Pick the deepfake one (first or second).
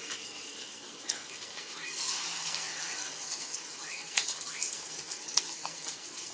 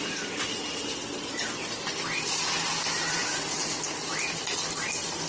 first